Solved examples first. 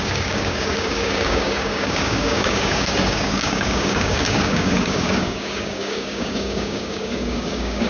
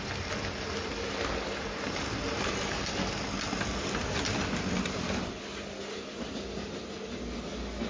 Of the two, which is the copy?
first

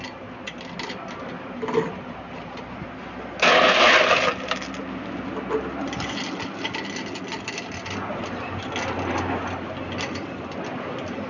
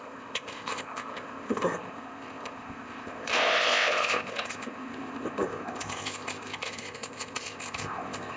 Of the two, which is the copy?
second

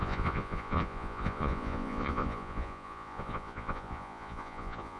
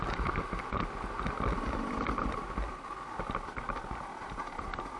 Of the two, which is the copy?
first